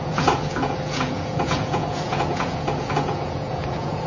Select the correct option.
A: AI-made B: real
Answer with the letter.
A